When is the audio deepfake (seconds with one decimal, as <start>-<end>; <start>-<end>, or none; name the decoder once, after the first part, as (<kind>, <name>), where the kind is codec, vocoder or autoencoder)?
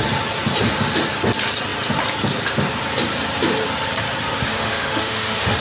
4.5-5.6 (autoencoder, DAC-VAE)